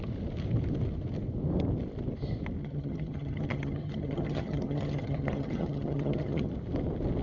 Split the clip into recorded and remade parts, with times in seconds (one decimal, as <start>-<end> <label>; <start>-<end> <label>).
0.0-2.6 recorded; 2.6-6.5 remade; 6.5-7.2 recorded